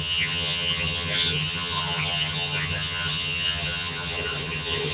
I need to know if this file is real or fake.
fake